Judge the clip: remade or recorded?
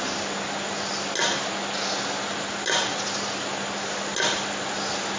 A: recorded